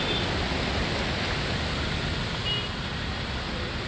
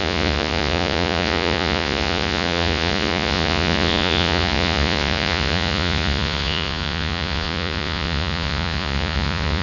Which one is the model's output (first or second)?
second